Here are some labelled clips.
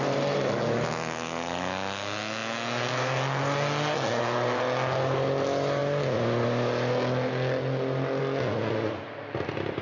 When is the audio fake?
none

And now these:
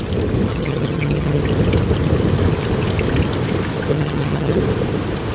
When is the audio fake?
0.5-1.4 (vocoder, HiFi-GAN); 3.9-4.6

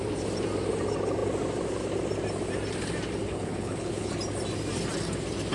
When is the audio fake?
3.2-4.1 (codec, HILCodec)

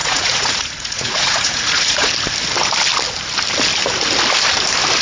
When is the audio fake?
0.0-2.1 (vocoder, Vocos)

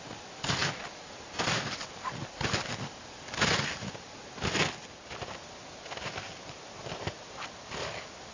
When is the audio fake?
none

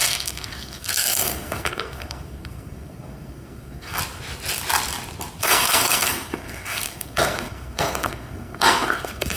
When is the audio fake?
0.0-4.0 (codec, SNAC); 5.4-9.4

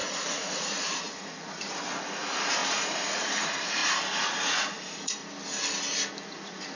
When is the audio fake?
0.0-5.2 (vocoder, Vocos); 6.3-6.8

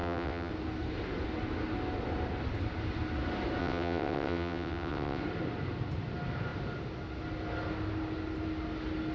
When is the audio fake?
0.0-0.5 (vocoder, WaveNeXt); 3.6-5.2